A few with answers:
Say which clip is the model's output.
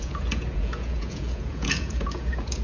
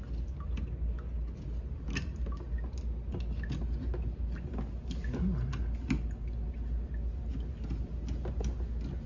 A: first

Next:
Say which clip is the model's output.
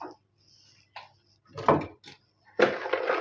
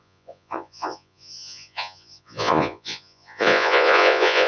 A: second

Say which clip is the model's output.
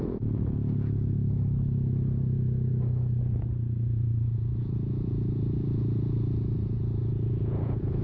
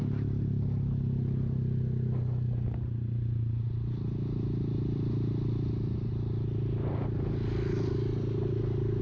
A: first